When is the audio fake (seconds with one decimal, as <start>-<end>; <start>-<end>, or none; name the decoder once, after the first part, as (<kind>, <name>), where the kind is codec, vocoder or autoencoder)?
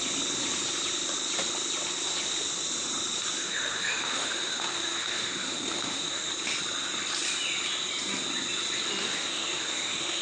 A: 3.4-6.3 (autoencoder, DAC-VAE); 9.0-10.2